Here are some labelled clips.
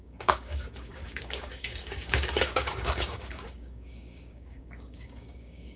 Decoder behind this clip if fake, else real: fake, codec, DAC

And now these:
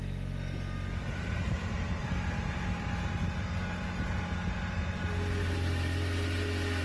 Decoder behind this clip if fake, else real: real